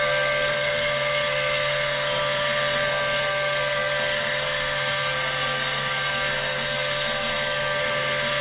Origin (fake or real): fake